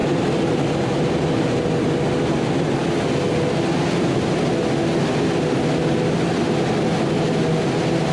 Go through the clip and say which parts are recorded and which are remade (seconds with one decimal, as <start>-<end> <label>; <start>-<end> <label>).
0.0-8.1 recorded